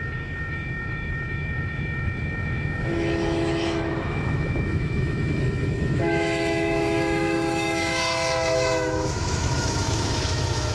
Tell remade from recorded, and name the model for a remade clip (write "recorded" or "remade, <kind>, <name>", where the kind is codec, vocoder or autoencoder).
remade, autoencoder, DAC-VAE